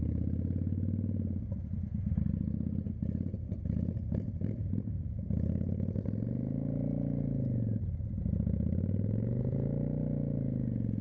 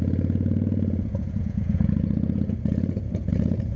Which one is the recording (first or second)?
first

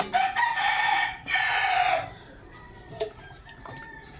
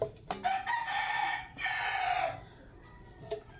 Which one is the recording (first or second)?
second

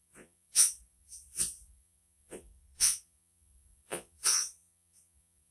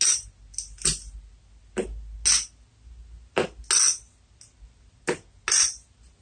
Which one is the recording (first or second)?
second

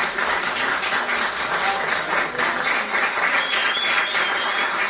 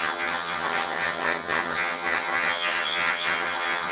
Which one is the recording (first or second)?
first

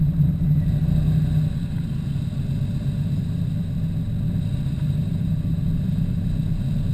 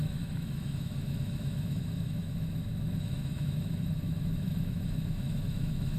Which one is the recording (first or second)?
first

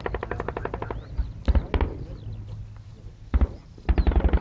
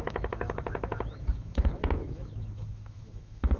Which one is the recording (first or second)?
first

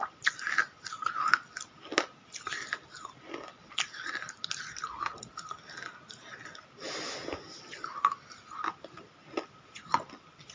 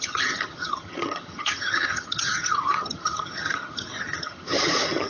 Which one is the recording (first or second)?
first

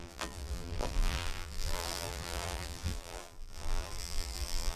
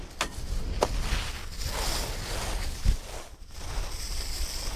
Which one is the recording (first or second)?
second